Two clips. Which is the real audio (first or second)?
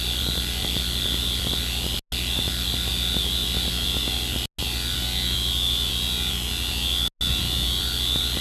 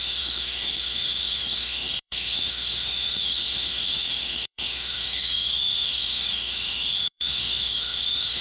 first